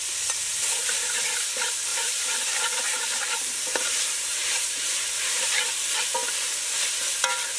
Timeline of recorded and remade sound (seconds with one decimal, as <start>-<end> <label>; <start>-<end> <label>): 0.0-1.9 recorded; 1.9-5.5 remade; 5.5-7.6 recorded